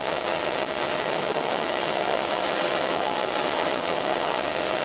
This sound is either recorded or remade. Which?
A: remade